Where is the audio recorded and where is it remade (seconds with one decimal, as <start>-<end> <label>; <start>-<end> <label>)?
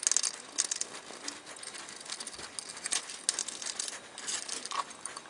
0.0-5.3 recorded